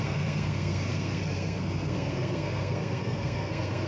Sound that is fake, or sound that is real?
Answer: fake